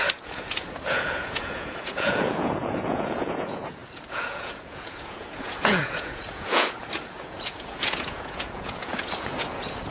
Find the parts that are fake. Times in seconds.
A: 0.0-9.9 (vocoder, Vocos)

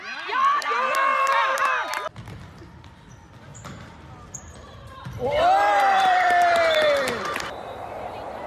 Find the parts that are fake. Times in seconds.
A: 3.5-8.0 (vocoder, BigVGAN v2)

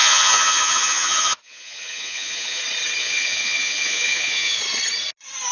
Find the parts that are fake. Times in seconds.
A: 0.0-2.6 (vocoder, Vocos); 3.0-4.6